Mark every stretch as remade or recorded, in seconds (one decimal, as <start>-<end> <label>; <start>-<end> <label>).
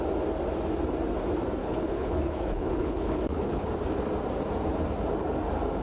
0.0-1.6 recorded; 1.6-3.7 remade; 3.7-5.8 recorded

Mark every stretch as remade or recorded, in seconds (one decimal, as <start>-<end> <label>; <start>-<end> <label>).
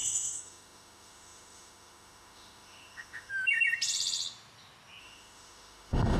0.0-3.3 remade; 3.3-5.0 recorded; 5.0-6.2 remade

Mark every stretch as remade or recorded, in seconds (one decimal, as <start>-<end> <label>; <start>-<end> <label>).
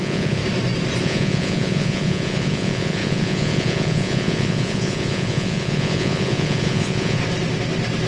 0.0-0.4 remade; 0.4-1.0 recorded; 1.0-7.2 remade; 7.2-8.1 recorded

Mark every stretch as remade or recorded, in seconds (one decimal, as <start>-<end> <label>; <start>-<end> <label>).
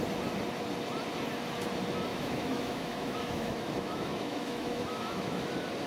0.0-2.1 recorded; 2.1-5.5 remade; 5.5-5.9 recorded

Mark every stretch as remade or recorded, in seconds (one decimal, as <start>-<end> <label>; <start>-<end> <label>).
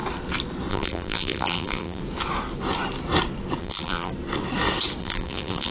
0.0-0.7 recorded; 0.7-2.0 remade; 2.0-3.6 recorded; 3.6-4.1 remade; 4.1-5.0 recorded; 5.0-5.7 remade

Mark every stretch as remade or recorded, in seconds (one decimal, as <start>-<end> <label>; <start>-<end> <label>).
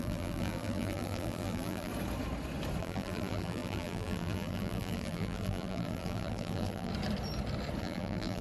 0.0-1.9 remade; 1.9-2.8 recorded; 2.8-6.9 remade; 6.9-7.8 recorded; 7.8-8.4 remade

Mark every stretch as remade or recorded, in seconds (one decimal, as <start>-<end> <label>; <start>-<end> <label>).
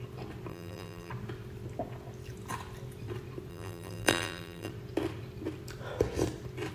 0.0-0.5 recorded; 0.5-1.1 remade; 1.1-3.5 recorded; 3.5-4.7 remade; 4.7-6.7 recorded